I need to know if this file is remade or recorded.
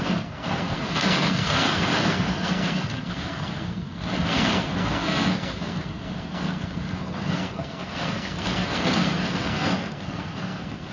remade